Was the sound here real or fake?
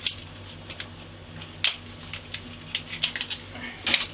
real